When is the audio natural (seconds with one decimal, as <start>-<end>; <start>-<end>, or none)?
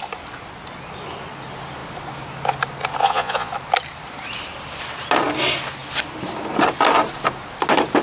0.0-3.0; 3.5-8.0